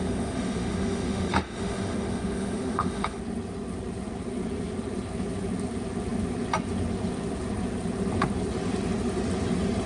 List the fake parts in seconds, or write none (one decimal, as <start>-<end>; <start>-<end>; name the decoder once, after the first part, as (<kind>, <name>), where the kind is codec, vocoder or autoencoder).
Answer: 0.0-3.2 (autoencoder, DAC-VAE)